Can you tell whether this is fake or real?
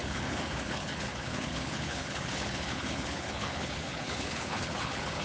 fake